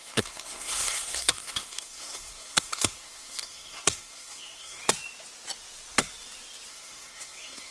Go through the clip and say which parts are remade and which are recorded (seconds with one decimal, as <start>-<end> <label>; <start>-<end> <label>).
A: 0.0-4.8 remade; 4.8-6.7 recorded; 6.7-7.7 remade